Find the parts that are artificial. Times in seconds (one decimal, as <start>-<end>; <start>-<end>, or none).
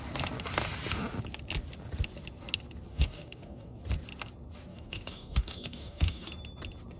2.9-3.8; 4.7-6.3